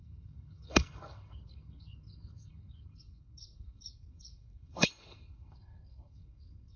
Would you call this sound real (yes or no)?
no